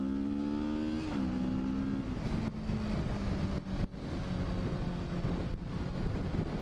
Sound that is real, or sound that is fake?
real